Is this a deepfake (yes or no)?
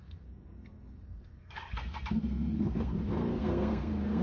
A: yes